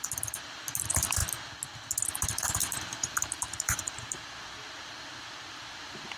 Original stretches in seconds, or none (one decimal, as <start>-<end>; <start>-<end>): 0.0-2.6; 4.0-6.2